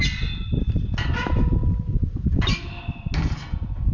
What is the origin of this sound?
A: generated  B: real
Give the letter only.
B